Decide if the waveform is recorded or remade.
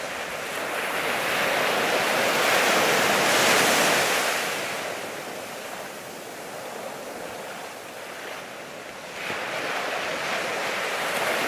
recorded